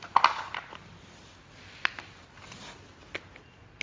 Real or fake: real